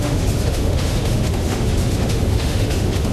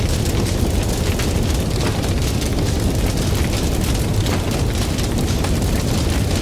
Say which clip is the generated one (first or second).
first